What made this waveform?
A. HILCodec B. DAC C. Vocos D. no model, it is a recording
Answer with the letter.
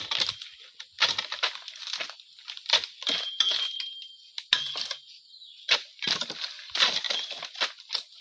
D